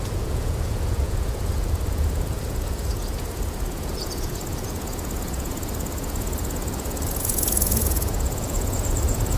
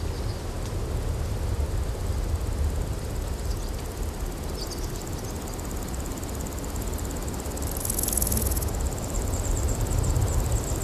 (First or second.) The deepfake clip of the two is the first